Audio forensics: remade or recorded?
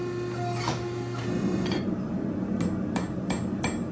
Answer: recorded